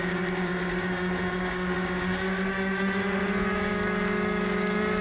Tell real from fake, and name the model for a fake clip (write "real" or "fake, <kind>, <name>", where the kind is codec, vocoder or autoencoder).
fake, codec, DAC